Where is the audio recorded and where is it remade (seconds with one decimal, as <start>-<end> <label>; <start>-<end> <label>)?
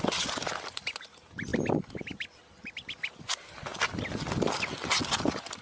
0.0-1.5 remade; 1.5-2.0 recorded; 2.0-3.7 remade; 3.7-5.6 recorded